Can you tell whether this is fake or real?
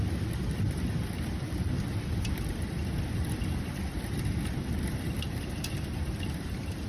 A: fake